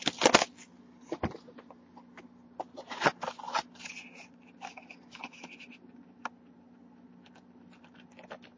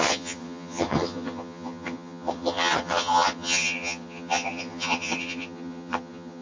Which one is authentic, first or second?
first